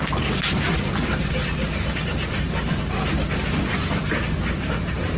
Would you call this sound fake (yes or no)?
yes